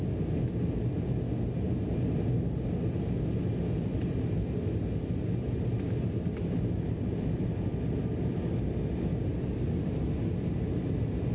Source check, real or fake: real